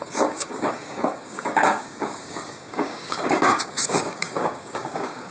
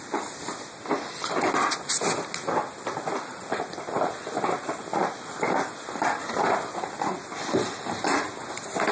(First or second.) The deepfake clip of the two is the first